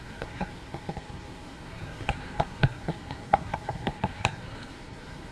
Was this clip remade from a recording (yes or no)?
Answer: yes